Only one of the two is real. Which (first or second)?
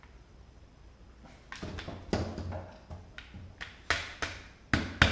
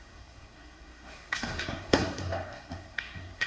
first